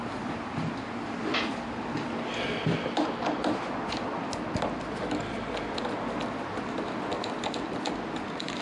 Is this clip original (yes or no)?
yes